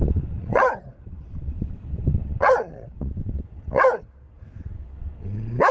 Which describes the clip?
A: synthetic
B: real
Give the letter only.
A